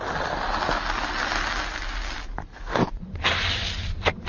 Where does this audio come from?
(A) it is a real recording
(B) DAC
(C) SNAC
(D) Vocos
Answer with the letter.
A